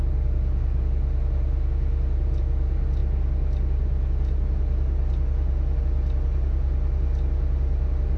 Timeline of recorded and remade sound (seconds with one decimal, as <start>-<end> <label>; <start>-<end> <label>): 0.0-8.2 recorded